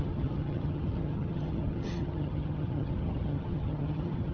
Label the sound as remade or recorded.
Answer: remade